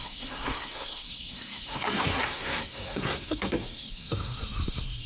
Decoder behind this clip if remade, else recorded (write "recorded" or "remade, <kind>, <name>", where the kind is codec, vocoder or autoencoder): remade, codec, SNAC